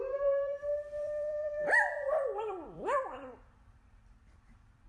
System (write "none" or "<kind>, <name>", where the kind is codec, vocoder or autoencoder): vocoder, BigVGAN v2